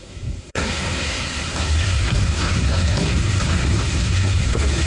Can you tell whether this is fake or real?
fake